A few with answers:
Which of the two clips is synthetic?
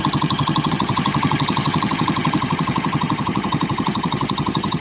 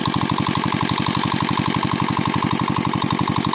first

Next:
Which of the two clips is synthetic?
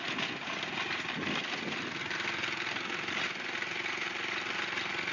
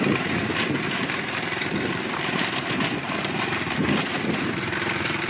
second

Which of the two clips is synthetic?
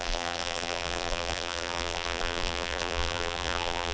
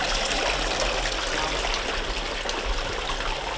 first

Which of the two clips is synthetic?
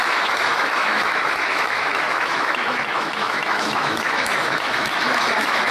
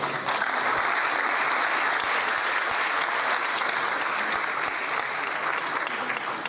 first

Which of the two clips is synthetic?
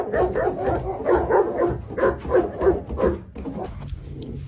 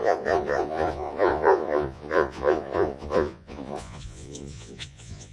second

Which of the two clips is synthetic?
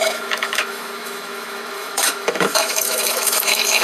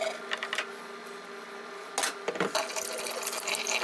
first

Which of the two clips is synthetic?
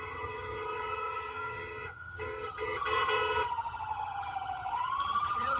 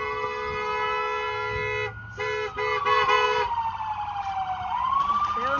first